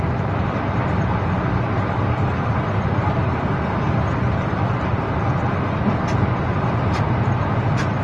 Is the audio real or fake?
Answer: real